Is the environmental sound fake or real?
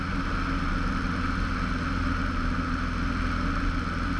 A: real